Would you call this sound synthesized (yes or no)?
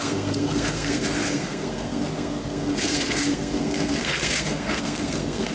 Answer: yes